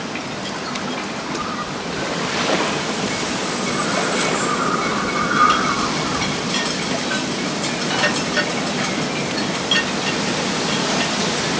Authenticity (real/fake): real